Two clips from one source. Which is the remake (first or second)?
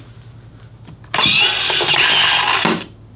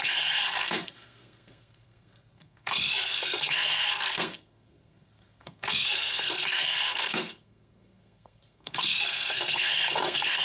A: second